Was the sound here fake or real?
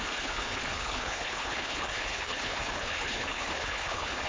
fake